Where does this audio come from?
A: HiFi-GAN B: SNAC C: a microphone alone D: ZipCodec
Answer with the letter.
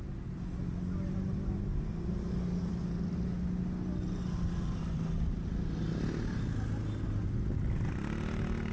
C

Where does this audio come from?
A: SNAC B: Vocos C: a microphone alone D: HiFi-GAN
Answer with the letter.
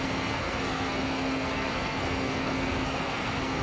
A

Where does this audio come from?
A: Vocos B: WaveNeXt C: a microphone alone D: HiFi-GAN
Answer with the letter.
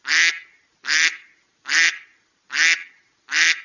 C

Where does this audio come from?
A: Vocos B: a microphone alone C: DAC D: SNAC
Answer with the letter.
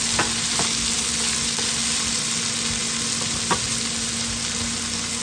B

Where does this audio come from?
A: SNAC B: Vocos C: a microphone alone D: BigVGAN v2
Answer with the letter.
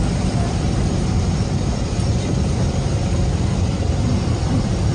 D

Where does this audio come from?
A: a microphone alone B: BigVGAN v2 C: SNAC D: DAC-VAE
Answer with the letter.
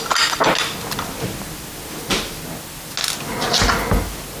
A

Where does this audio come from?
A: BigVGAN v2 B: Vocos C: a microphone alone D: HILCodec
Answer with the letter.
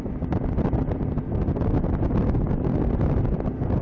C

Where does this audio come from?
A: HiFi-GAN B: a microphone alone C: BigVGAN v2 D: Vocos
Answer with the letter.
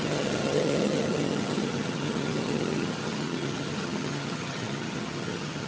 A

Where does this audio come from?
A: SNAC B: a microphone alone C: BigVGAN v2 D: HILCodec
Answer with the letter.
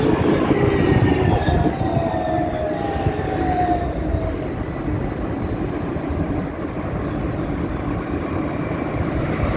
B